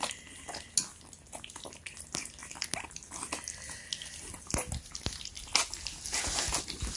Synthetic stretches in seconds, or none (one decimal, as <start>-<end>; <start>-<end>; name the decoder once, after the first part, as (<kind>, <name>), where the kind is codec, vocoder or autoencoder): none